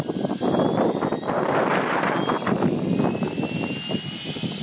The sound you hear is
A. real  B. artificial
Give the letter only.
A